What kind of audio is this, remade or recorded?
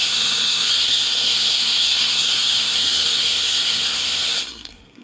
remade